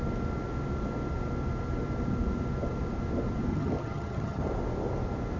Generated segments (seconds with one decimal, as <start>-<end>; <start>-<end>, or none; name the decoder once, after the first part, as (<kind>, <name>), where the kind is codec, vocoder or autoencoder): 3.5-4.5 (vocoder, HiFi-GAN)